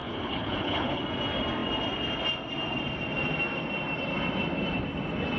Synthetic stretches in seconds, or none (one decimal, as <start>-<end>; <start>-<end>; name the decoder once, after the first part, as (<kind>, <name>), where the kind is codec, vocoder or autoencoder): 0.0-1.0 (codec, HILCodec)